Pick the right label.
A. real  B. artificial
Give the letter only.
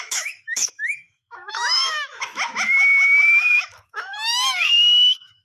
B